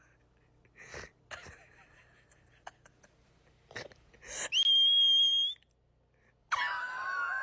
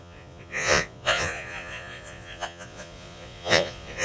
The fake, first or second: second